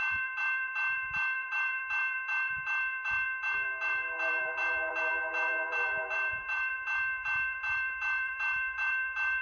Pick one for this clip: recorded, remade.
remade